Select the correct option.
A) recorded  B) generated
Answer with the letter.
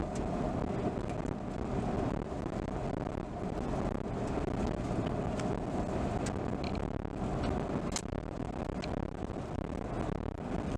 A